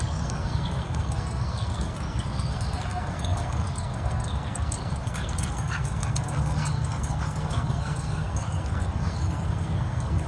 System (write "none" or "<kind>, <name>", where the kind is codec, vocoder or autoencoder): codec, SNAC